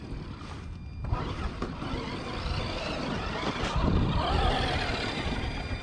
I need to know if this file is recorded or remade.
recorded